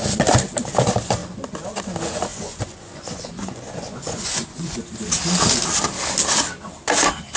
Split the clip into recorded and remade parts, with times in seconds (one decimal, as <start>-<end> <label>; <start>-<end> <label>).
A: 0.0-2.3 recorded; 2.3-4.8 remade; 4.8-7.4 recorded